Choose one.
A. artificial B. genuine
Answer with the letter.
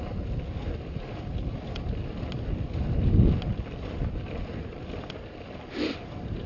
A